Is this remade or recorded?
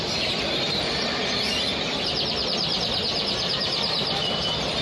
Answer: remade